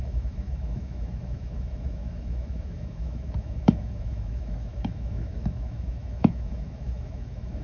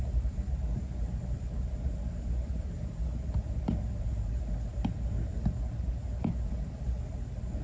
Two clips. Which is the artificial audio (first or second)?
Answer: first